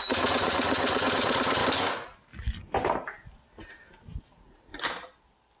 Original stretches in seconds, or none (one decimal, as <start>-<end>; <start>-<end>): 1.6-4.2; 4.7-5.6